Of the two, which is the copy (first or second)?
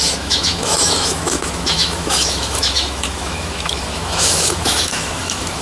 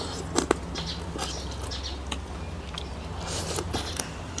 first